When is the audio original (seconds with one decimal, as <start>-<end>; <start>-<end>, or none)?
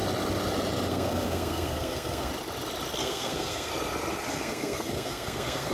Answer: 0.0-0.9; 2.3-3.0; 3.7-4.3